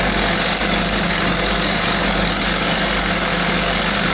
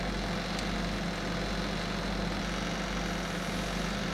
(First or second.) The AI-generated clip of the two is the first